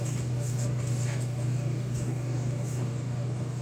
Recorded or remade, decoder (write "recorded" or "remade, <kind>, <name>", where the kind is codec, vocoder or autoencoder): remade, codec, DAC